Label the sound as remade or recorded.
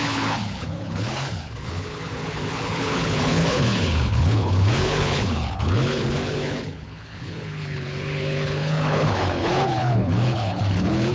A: remade